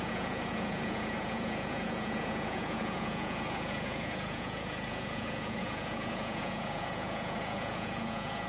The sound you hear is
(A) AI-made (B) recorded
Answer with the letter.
A